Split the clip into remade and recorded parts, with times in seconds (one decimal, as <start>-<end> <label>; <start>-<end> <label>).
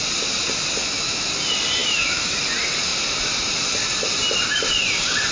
0.0-0.8 recorded; 0.8-1.3 remade; 1.3-1.8 recorded; 1.8-2.4 remade; 2.4-5.3 recorded